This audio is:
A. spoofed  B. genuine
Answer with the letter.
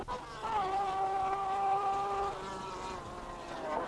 B